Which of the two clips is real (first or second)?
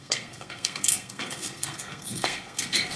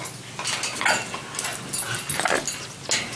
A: second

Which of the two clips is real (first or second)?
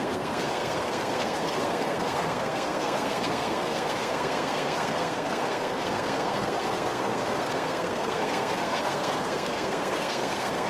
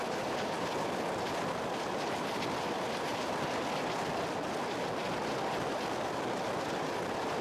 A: second